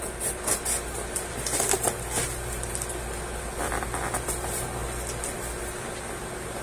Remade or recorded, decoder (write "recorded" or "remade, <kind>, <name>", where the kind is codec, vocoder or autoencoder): recorded